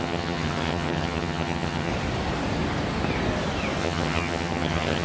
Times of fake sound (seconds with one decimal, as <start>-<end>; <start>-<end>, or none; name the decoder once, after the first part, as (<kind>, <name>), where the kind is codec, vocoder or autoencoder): 0.0-1.9 (vocoder, HiFi-GAN); 3.8-5.0